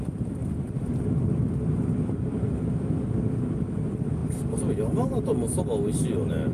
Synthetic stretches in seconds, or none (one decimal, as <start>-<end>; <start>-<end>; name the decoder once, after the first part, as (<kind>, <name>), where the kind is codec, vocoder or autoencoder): none